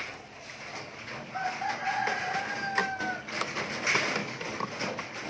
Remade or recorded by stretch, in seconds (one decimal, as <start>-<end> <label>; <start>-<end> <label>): 0.0-0.7 recorded; 0.7-1.6 remade; 1.6-2.8 recorded; 2.8-3.6 remade; 3.6-4.2 recorded; 4.2-5.3 remade